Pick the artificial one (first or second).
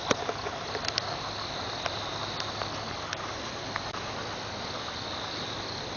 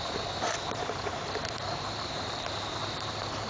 second